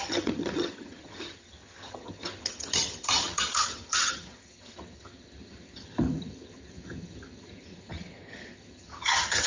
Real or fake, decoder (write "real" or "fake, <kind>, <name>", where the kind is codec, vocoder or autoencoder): fake, vocoder, HiFi-GAN